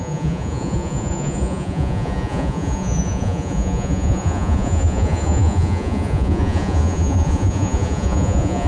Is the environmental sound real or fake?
fake